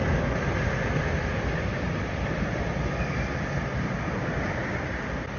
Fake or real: real